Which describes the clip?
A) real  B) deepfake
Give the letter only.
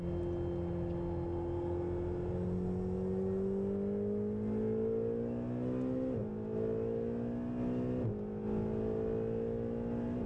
A